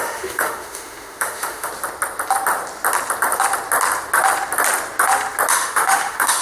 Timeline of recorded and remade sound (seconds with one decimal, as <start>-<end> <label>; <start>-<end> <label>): 0.0-1.7 remade; 1.7-5.5 recorded; 5.5-6.4 remade